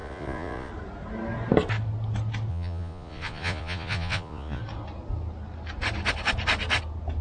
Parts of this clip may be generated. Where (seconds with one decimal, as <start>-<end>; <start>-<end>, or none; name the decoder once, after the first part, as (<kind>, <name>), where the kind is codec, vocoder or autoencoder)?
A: 0.0-0.7 (vocoder, Vocos); 2.5-4.6